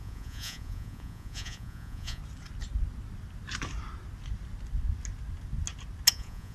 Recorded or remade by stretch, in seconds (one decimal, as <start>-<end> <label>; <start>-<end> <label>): 0.0-2.2 remade; 2.2-6.1 recorded; 6.1-6.5 remade